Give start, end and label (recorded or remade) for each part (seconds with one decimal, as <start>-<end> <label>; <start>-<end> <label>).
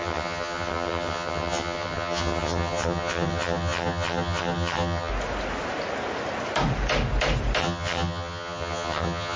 0.0-5.1 remade; 5.1-7.6 recorded; 7.6-9.4 remade